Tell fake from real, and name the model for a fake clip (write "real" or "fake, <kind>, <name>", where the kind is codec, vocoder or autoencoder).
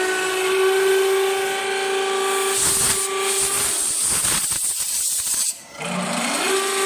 real